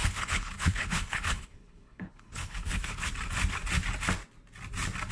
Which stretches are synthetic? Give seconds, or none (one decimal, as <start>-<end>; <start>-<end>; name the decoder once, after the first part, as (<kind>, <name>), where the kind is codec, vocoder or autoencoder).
0.0-3.1 (codec, HILCodec)